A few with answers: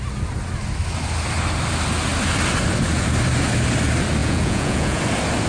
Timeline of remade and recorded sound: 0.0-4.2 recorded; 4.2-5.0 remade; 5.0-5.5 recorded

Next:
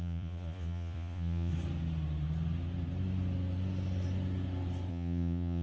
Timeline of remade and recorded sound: 0.0-1.5 remade; 1.5-4.9 recorded; 4.9-5.6 remade

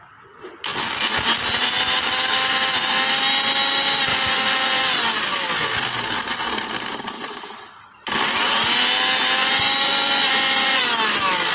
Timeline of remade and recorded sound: 0.0-4.1 recorded; 4.1-4.8 remade; 4.8-9.4 recorded; 9.4-10.8 remade; 10.8-11.5 recorded